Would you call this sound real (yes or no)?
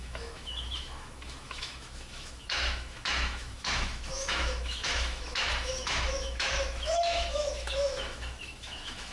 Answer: no